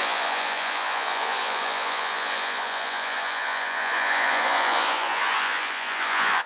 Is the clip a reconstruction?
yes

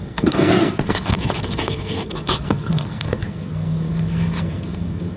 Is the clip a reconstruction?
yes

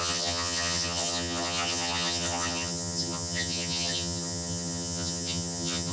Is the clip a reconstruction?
yes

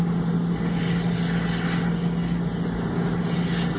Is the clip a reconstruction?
no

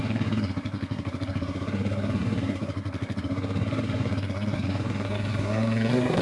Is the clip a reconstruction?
yes